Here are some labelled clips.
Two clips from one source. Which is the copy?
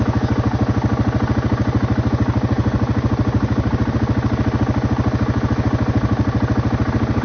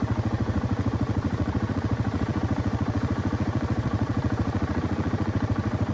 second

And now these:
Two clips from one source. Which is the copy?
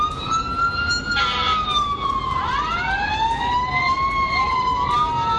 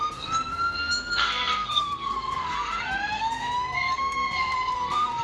second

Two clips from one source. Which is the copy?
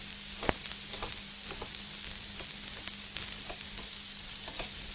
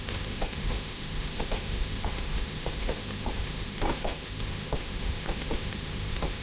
second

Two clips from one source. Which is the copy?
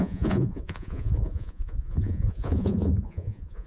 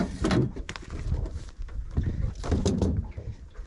first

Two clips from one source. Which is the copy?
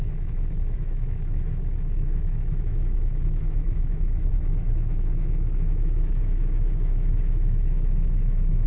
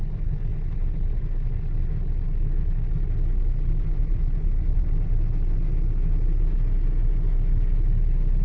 first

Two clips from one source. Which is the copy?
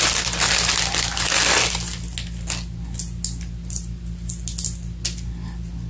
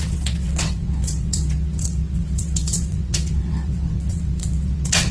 second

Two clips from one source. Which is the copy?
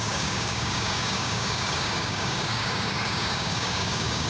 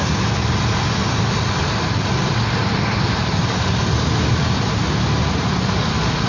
first